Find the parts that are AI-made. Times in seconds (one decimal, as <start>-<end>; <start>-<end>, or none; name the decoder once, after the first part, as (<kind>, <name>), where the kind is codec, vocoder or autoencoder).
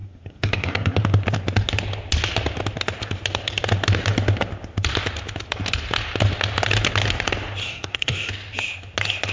0.0-1.0 (codec, SNAC); 7.6-8.3